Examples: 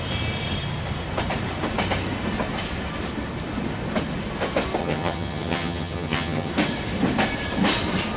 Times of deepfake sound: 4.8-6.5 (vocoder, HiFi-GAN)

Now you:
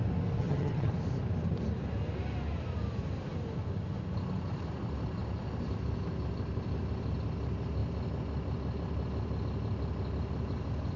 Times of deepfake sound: 0.4-0.9 (vocoder, HiFi-GAN)